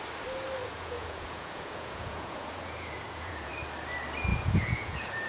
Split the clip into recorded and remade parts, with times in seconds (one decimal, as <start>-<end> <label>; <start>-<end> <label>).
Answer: 0.0-0.6 recorded; 0.6-3.5 remade; 3.5-4.3 recorded; 4.3-5.3 remade